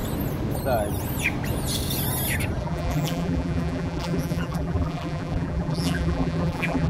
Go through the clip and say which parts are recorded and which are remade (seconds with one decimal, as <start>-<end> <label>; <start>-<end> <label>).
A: 0.0-2.6 recorded; 2.6-6.9 remade